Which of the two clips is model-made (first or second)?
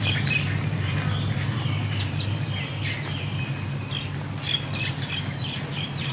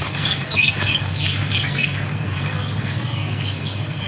second